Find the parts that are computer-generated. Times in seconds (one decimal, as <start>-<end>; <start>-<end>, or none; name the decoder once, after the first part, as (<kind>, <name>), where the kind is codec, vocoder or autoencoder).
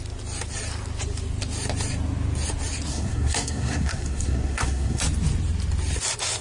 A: 2.9-5.0 (codec, SNAC)